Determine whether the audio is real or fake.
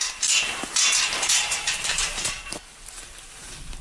fake